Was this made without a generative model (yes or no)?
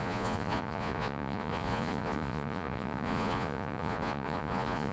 no